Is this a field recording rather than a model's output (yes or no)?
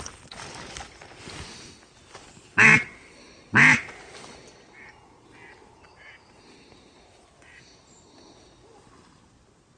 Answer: yes